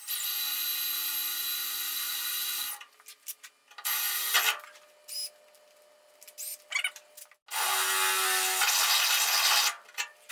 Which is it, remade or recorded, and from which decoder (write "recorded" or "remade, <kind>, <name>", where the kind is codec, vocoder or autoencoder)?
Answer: recorded